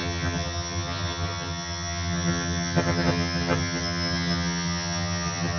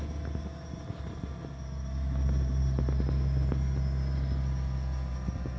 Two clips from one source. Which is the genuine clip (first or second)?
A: second